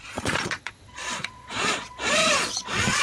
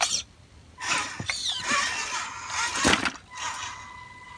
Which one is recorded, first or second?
second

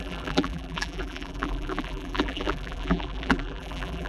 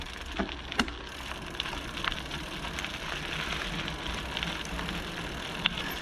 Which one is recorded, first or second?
second